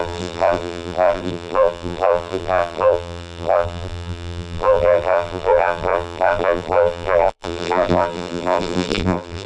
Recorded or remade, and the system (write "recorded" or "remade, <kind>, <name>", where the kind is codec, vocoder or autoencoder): remade, vocoder, BigVGAN v2